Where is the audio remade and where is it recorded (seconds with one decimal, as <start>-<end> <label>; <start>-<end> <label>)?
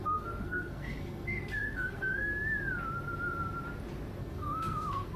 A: 0.0-2.3 remade; 2.3-4.2 recorded; 4.2-5.2 remade